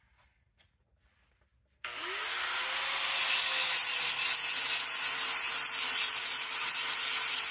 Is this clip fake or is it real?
real